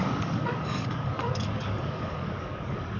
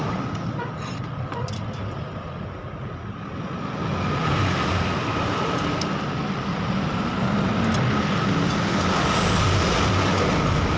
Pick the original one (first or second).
second